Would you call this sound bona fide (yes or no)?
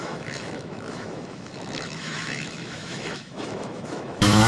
no